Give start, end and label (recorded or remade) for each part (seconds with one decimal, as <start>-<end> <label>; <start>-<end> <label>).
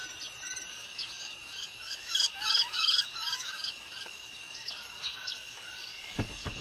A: 0.0-0.7 recorded; 0.7-6.6 remade